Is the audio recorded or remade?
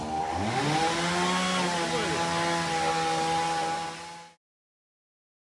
recorded